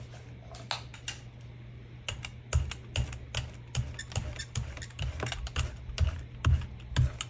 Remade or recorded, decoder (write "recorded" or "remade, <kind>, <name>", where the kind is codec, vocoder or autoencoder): recorded